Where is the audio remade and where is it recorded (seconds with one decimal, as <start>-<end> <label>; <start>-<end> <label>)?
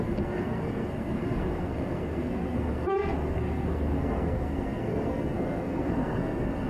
0.0-6.7 remade